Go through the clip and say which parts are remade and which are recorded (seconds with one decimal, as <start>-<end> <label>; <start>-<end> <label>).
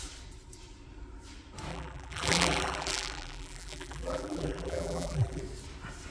0.0-1.7 recorded; 1.7-5.4 remade; 5.4-6.1 recorded